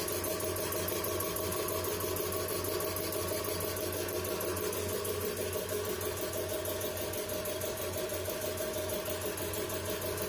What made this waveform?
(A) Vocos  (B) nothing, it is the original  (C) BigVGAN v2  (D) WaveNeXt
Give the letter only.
B